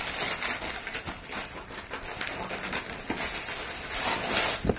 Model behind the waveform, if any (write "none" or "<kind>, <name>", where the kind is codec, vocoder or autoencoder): none